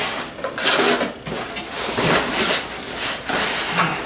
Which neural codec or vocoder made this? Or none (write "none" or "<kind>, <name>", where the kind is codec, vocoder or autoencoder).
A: none